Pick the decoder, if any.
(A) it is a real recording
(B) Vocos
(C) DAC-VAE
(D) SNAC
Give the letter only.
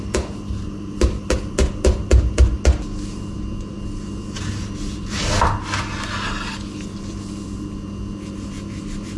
A